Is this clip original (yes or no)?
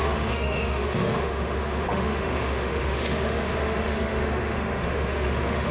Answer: no